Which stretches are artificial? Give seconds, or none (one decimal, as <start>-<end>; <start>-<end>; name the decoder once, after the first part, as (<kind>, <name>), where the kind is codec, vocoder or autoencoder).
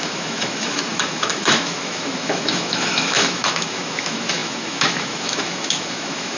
0.0-6.4 (autoencoder, DAC-VAE)